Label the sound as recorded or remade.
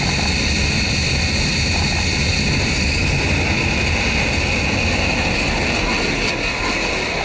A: recorded